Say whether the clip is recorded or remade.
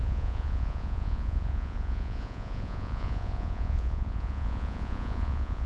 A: remade